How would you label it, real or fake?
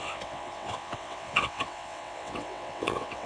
fake